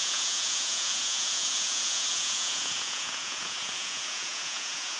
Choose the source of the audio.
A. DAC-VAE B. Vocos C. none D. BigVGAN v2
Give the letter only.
B